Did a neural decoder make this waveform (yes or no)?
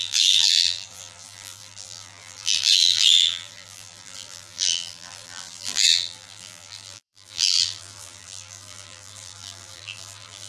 yes